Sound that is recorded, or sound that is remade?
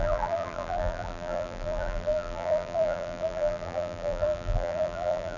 remade